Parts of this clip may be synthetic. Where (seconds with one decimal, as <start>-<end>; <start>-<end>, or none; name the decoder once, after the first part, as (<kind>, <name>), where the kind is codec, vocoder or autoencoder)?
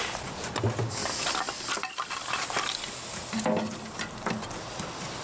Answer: none